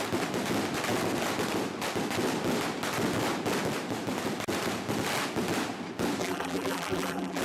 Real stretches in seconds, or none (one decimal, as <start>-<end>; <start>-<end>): 0.0-6.2